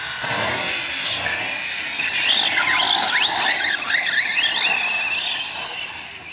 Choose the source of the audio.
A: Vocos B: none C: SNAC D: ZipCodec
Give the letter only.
B